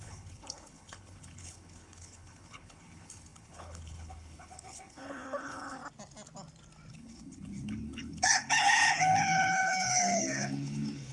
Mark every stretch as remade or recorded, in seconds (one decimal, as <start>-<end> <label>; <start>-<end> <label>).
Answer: 0.0-5.8 remade; 5.8-6.9 recorded; 6.9-11.1 remade